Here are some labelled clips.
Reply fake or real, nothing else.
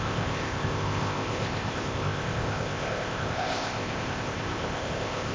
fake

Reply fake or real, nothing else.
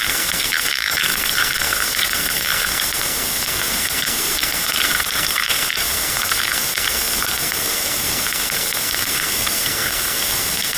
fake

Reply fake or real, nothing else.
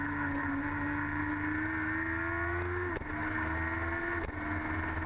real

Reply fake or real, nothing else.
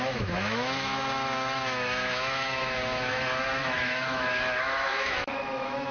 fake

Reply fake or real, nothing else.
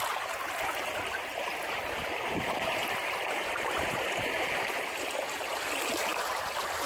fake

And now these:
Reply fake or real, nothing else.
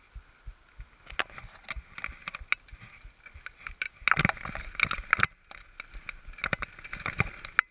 real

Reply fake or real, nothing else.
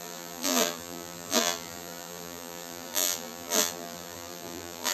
fake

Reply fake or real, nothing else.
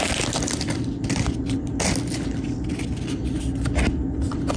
real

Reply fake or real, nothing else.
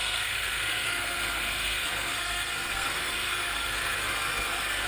fake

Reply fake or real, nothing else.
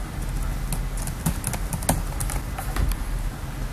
real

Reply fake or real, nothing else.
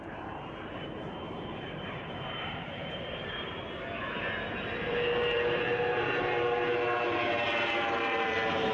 fake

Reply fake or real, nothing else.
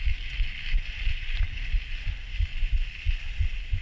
real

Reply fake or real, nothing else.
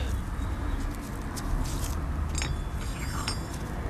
real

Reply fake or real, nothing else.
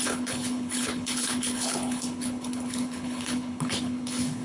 fake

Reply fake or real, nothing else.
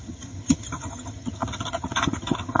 fake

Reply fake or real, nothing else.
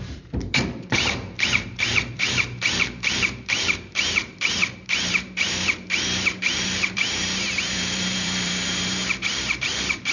fake